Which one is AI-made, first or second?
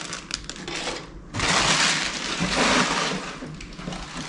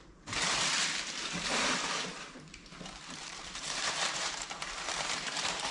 second